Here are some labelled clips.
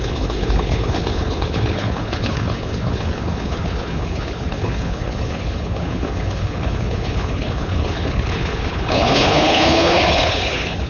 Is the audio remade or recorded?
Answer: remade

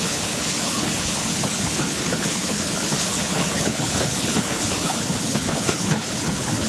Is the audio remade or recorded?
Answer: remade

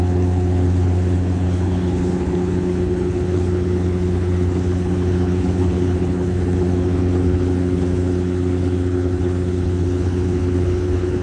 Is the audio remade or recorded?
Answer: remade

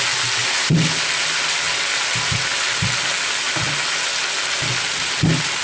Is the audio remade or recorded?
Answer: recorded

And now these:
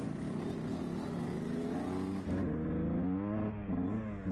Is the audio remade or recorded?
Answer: recorded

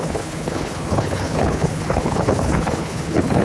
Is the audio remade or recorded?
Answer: remade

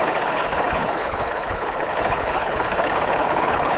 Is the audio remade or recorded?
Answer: remade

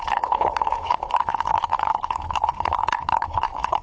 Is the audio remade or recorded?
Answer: remade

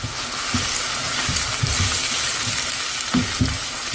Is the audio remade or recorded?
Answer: recorded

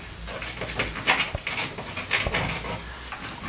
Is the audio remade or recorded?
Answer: recorded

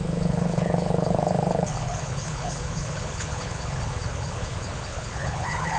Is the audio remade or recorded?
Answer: remade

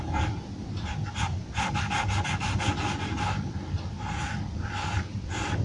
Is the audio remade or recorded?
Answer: recorded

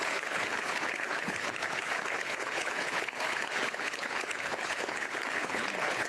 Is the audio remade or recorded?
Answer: remade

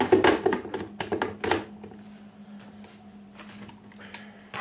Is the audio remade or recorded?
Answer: recorded